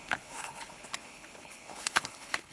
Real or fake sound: fake